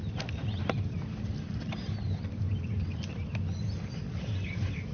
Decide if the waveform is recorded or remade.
remade